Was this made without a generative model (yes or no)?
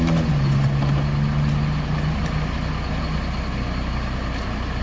yes